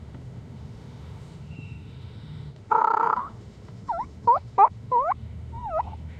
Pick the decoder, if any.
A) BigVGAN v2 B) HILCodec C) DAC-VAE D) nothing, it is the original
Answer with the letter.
C